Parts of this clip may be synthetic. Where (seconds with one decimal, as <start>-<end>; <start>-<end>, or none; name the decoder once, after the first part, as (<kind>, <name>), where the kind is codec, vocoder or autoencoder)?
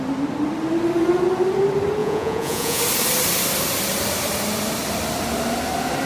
2.0-2.8 (vocoder, Vocos)